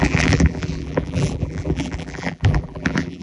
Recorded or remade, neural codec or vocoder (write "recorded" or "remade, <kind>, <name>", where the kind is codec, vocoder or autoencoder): remade, vocoder, BigVGAN v2